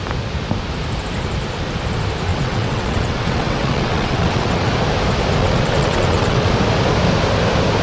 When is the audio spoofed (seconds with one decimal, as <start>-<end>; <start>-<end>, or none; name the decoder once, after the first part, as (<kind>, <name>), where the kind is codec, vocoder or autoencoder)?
2.3-4.7 (vocoder, WaveNeXt); 5.4-6.5

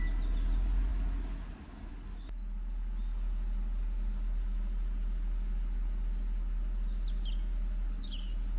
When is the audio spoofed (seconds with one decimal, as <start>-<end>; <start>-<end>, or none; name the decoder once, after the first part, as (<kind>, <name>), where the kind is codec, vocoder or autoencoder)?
none

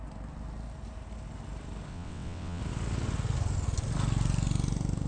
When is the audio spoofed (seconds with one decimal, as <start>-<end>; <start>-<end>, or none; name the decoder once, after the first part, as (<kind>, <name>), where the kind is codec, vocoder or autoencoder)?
1.9-2.6 (vocoder, WaveNeXt)

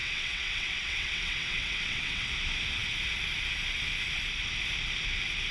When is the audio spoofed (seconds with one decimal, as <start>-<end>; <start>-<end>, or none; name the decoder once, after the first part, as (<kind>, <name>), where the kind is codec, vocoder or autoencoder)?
0.0-2.3 (vocoder, WaveNeXt)

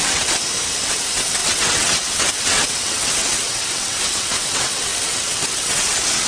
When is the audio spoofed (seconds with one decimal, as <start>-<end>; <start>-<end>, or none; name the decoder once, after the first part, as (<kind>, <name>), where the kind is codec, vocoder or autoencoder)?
0.0-0.4 (vocoder, WaveNeXt); 0.9-6.3

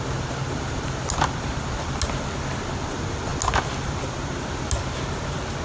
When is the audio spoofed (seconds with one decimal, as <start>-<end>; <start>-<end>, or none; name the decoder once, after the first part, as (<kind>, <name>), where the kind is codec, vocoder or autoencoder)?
none

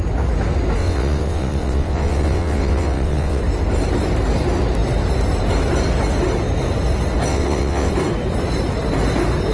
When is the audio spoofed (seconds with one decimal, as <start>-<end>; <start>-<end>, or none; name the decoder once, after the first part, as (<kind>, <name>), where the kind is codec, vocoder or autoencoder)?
0.8-3.4 (vocoder, WaveNeXt); 7.3-7.9